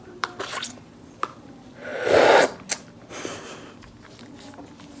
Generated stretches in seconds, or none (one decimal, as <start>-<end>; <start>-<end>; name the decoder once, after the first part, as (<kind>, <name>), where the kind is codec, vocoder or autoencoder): 0.0-1.9 (vocoder, BigVGAN v2)